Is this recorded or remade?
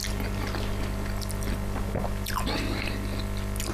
recorded